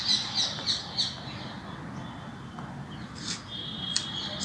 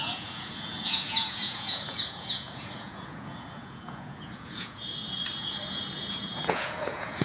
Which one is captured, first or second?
first